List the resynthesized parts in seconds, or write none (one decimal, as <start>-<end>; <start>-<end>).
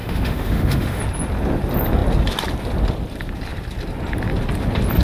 0.0-1.0